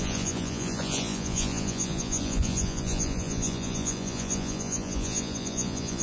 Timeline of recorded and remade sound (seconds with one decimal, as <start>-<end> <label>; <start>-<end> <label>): 0.0-6.0 remade